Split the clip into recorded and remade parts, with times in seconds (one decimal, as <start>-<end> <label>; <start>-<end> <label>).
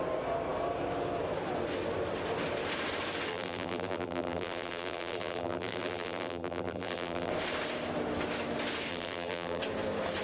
0.0-3.3 recorded; 3.3-7.3 remade; 7.3-8.9 recorded; 8.9-9.6 remade; 9.6-10.2 recorded